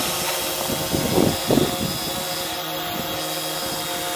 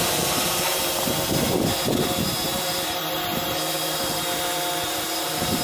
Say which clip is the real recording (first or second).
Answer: first